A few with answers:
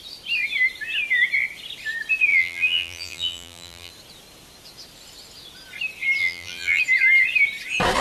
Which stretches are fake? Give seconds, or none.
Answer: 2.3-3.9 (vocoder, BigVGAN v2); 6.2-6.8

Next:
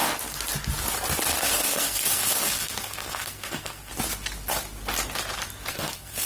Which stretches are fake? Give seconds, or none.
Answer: 1.4-3.9 (codec, SNAC); 5.7-6.3

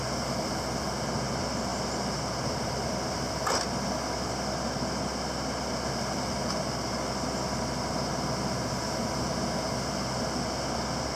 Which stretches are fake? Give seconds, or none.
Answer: none

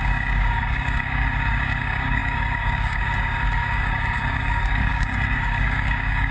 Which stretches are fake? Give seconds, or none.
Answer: 0.0-6.3 (codec, DAC)

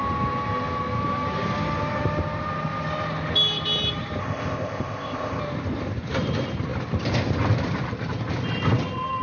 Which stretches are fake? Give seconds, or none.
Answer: 4.2-5.4 (codec, ZipCodec)

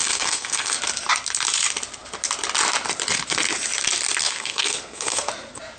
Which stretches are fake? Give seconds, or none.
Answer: 0.0-0.8 (codec, SNAC); 4.2-5.3

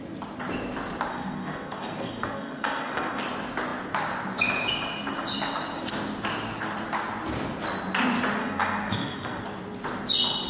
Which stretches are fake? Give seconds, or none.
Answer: 1.1-3.2 (codec, SNAC); 8.4-9.4